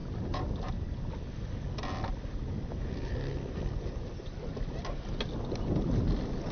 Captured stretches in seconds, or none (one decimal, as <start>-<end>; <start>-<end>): 0.0-6.5